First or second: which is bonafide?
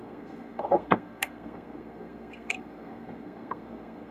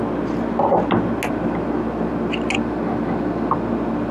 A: second